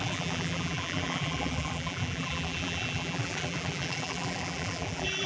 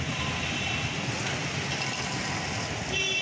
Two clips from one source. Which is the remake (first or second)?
first